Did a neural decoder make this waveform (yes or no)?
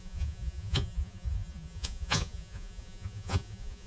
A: yes